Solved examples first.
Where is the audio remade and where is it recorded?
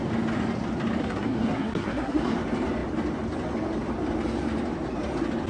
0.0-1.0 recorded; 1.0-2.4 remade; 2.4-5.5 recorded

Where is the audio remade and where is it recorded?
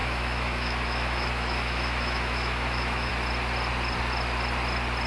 0.0-3.1 remade; 3.1-5.1 recorded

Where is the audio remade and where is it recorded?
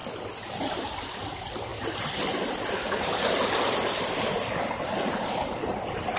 0.0-6.2 recorded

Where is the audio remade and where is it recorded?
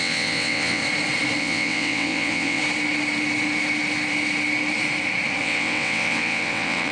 0.0-0.8 remade; 0.8-1.4 recorded; 1.4-2.6 remade; 2.6-5.4 recorded; 5.4-6.9 remade